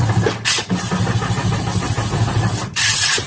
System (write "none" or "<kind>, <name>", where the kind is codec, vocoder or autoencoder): none